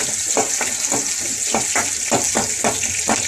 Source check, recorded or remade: recorded